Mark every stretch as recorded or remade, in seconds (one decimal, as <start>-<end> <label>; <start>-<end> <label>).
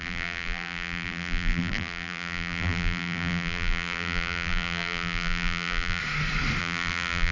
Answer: 0.0-6.0 remade; 6.0-6.6 recorded; 6.6-7.3 remade